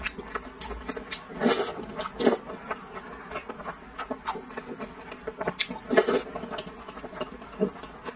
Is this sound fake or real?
real